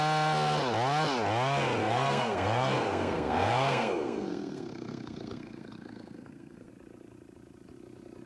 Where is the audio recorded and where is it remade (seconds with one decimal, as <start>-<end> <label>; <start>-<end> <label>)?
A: 0.0-1.8 recorded; 1.8-6.7 remade; 6.7-8.3 recorded